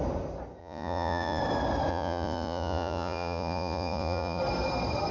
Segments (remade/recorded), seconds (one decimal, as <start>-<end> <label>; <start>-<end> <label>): 0.0-0.6 recorded; 0.6-1.4 remade; 1.4-1.9 recorded; 1.9-4.4 remade; 4.4-5.1 recorded